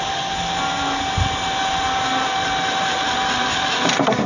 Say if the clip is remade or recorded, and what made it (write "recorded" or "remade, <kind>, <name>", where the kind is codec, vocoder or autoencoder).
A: recorded